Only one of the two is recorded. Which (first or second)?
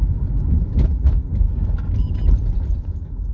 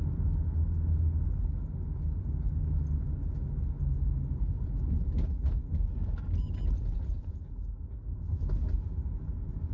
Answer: second